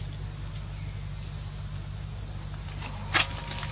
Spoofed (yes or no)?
no